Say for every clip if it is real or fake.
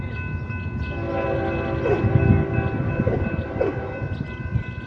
real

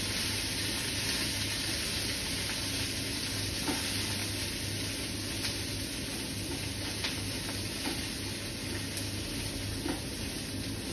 real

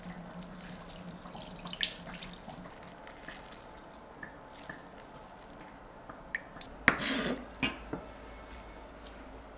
real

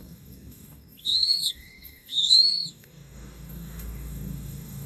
fake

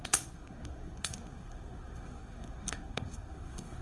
fake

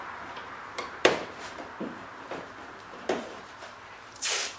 fake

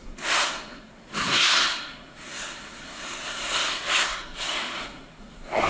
fake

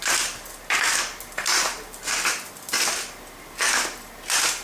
real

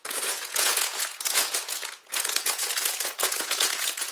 fake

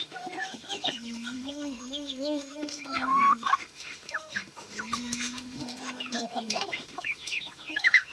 fake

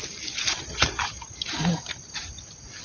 real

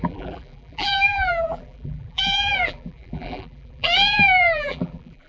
fake